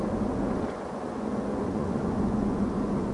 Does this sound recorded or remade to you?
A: remade